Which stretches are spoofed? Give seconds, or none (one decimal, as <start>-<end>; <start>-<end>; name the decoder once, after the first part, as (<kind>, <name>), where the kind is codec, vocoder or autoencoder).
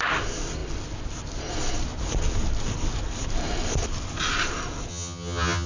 4.9-5.7 (vocoder, HiFi-GAN)